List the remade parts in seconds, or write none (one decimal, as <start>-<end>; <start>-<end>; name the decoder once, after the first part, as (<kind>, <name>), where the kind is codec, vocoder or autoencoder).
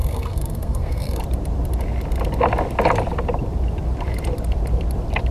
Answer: 0.0-1.2 (codec, SNAC)